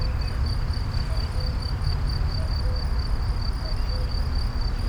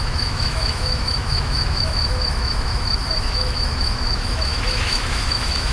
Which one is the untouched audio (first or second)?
first